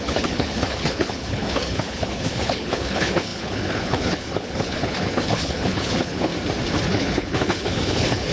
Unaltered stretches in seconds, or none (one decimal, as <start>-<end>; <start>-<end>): 6.3-6.8